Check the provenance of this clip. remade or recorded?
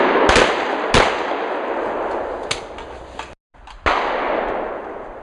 recorded